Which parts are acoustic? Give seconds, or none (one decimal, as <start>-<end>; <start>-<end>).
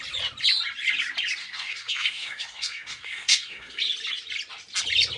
0.0-1.4; 3.8-5.2